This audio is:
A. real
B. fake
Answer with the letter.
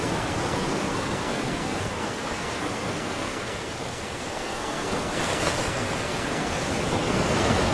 B